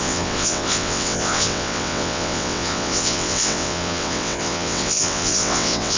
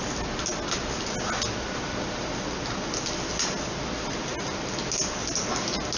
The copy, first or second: first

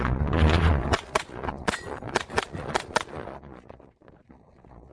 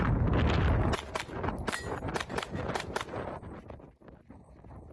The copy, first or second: first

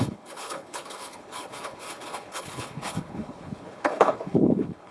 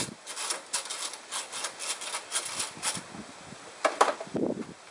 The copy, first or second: first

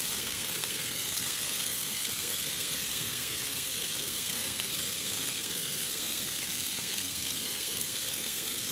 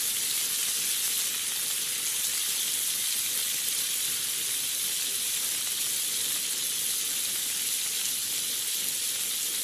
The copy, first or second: first